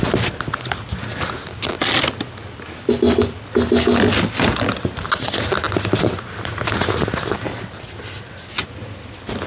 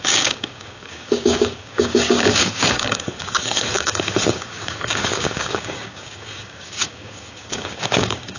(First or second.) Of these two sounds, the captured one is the first